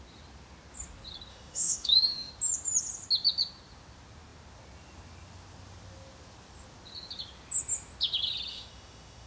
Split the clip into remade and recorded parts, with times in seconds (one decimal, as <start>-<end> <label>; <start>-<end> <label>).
0.0-1.3 recorded; 1.3-2.3 remade; 2.3-8.5 recorded; 8.5-9.3 remade